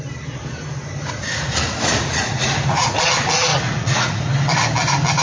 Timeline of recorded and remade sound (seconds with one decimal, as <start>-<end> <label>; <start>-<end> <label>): 0.0-1.0 recorded; 1.0-3.0 remade; 3.0-3.5 recorded; 3.5-4.2 remade; 4.2-5.2 recorded